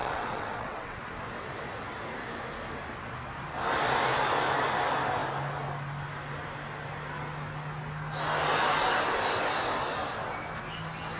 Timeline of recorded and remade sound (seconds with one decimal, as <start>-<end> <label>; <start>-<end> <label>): 0.0-1.0 remade; 1.0-11.2 recorded